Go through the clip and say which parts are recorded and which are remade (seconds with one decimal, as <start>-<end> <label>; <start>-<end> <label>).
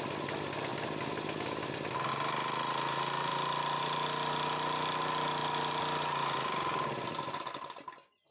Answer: 0.0-8.3 recorded